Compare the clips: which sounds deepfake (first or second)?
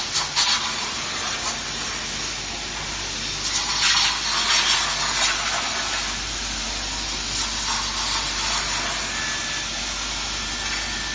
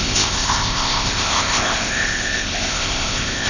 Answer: second